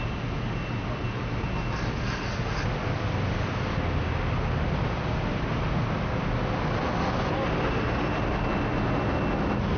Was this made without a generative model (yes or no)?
yes